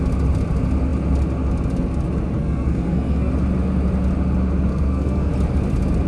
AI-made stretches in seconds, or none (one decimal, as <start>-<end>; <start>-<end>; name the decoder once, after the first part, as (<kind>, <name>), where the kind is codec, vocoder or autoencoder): 2.4-3.3 (codec, SNAC); 4.7-5.3